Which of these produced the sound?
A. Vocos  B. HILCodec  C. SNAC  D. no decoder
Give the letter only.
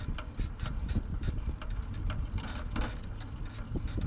D